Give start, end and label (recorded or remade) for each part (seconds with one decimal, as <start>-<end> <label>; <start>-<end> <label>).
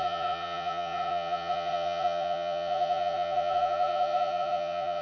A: 0.0-5.0 remade